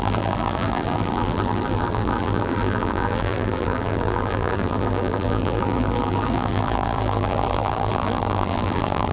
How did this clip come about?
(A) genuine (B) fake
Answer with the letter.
B